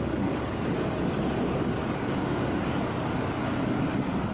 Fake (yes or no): yes